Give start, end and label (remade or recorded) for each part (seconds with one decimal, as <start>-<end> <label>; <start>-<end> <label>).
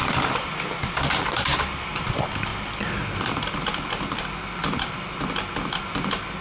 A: 0.0-6.4 recorded